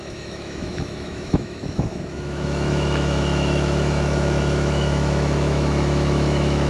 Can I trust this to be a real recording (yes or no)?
no